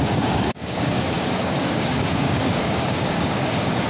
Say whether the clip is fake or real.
fake